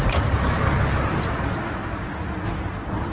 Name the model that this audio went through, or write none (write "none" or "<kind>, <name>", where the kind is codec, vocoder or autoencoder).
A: none